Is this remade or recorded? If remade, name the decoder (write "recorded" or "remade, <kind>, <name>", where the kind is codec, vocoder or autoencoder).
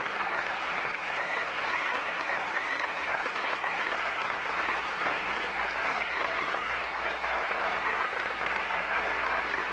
remade, codec, SNAC